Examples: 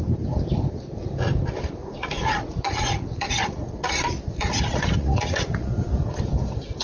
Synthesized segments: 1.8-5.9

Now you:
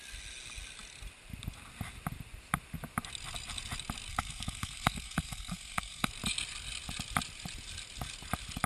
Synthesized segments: 4.1-6.1